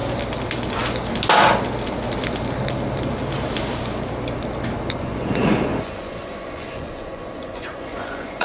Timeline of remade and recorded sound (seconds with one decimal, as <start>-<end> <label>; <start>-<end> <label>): 0.0-5.0 recorded; 5.0-8.4 remade